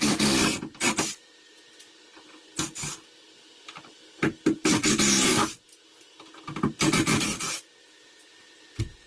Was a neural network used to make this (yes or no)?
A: no